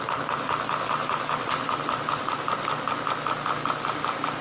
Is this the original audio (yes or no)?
yes